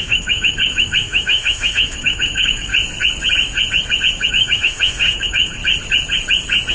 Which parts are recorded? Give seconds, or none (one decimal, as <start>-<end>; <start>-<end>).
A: 2.7-4.3; 5.6-6.7